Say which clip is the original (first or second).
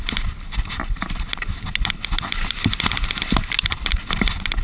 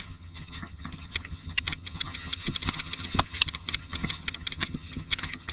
first